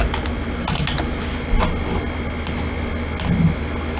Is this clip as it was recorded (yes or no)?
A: yes